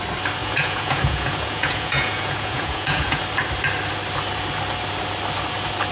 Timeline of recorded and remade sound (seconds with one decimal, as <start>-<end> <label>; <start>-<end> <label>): 0.0-0.4 recorded; 0.4-3.2 remade; 3.2-5.9 recorded